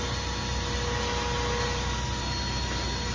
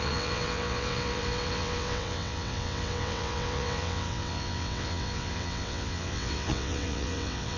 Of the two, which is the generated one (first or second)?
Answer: second